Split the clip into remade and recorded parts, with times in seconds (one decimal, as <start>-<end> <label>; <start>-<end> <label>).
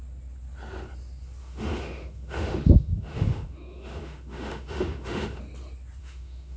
0.0-1.4 recorded; 1.4-5.4 remade; 5.4-6.0 recorded; 6.0-6.6 remade